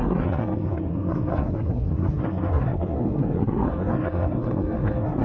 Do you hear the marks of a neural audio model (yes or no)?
yes